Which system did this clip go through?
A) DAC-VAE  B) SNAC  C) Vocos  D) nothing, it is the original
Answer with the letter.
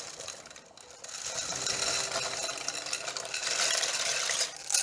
D